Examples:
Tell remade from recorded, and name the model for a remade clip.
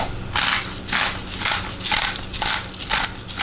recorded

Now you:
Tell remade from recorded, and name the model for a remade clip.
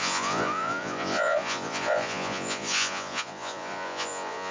remade, vocoder, Vocos